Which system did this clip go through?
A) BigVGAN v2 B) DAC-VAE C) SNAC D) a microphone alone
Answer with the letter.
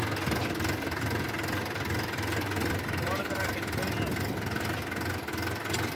D